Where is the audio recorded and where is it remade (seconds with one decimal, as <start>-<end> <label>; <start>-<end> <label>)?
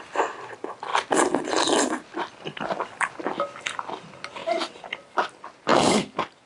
0.0-6.5 recorded